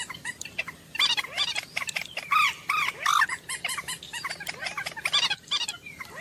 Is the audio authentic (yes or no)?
no